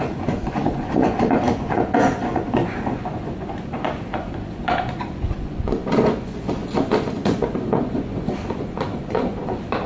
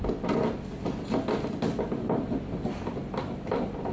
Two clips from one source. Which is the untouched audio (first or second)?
second